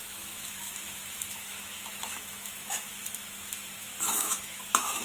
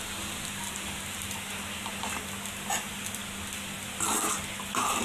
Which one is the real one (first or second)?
second